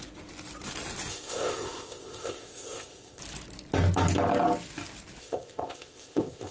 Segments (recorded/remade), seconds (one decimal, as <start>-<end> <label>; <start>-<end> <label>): 0.0-1.1 recorded; 1.1-3.2 remade; 3.2-5.2 recorded; 5.2-6.5 remade